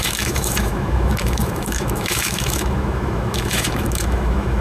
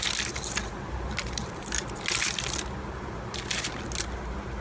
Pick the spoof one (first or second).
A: first